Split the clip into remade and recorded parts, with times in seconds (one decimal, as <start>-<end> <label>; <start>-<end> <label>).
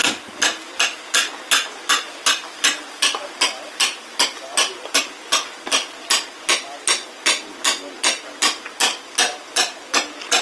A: 0.0-10.4 recorded